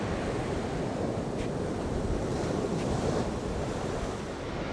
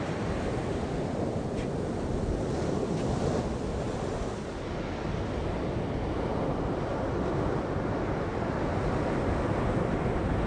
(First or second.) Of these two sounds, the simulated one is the first